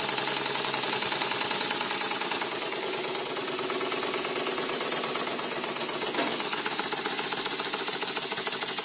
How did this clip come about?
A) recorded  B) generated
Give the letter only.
A